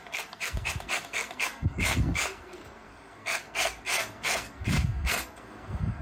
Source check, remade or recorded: remade